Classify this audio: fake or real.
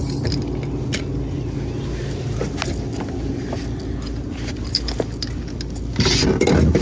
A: real